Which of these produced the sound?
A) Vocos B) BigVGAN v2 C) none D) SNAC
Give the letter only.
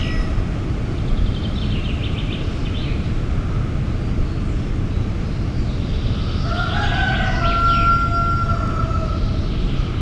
C